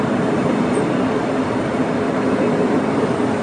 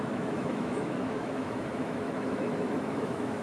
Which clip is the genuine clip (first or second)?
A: first